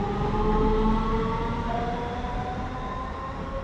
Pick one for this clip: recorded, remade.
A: recorded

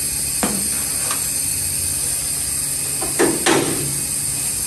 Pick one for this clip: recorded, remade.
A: recorded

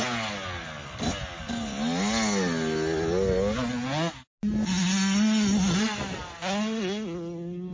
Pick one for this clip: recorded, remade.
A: recorded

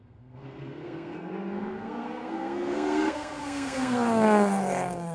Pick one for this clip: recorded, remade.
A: remade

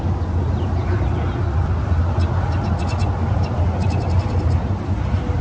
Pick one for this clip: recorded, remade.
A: recorded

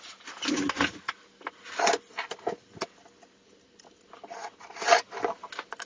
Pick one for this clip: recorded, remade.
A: recorded